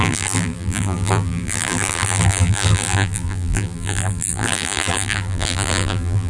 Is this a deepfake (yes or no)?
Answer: yes